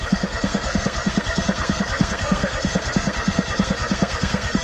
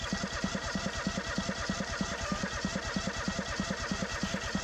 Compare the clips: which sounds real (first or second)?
second